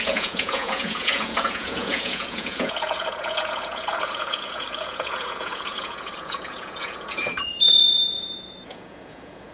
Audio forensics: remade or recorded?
remade